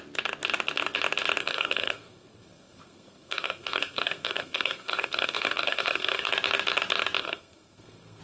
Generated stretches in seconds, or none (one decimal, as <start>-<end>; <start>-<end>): 1.4-6.3; 7.2-8.2